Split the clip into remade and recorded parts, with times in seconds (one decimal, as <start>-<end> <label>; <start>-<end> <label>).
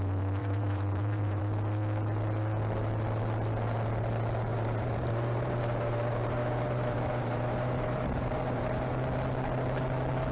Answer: 0.0-0.4 recorded; 0.4-1.4 remade; 1.4-4.5 recorded; 4.5-8.9 remade; 8.9-10.3 recorded